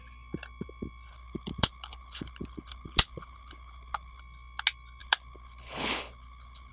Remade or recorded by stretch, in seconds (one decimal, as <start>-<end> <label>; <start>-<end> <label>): 0.0-1.1 recorded; 1.1-4.2 remade; 4.2-5.0 recorded; 5.0-6.7 remade